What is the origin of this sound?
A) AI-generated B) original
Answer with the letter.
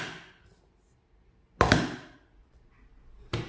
B